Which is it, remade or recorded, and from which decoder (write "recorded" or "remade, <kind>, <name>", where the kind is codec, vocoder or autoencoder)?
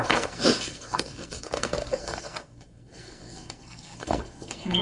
remade, codec, SNAC